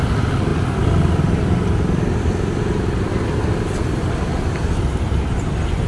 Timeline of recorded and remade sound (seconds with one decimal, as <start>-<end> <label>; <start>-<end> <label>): 0.0-5.9 recorded